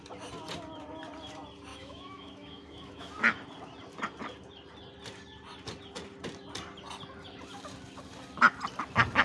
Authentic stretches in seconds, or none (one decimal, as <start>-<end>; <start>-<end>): 0.0-1.7; 3.1-9.2